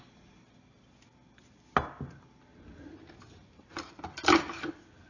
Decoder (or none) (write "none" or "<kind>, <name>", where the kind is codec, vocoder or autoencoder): none